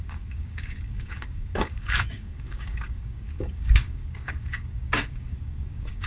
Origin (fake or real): fake